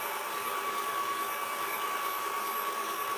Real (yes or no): no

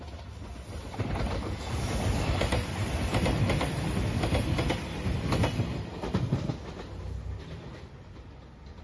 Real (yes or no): yes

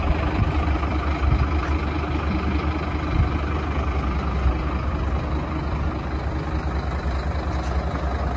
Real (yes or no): yes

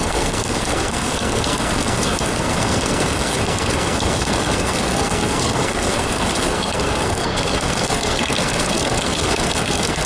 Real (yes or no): no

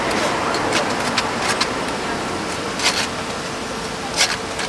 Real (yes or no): yes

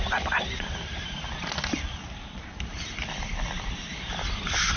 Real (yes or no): yes